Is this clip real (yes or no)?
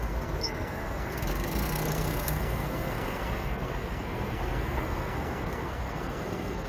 no